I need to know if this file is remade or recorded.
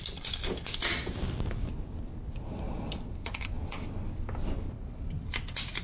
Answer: recorded